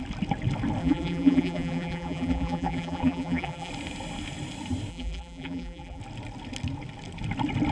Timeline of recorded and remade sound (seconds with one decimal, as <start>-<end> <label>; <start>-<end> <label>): 0.0-0.8 recorded; 0.8-3.7 remade; 3.7-4.9 recorded; 4.9-6.0 remade; 6.0-7.7 recorded